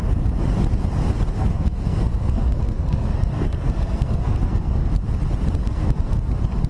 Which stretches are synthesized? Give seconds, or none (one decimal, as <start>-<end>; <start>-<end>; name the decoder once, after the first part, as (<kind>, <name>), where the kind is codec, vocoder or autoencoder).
1.4-4.9 (codec, SNAC); 5.6-6.3